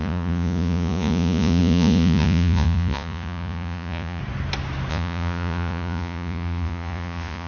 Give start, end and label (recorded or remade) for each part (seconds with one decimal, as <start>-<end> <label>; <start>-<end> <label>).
0.0-4.2 remade; 4.2-4.9 recorded; 4.9-7.5 remade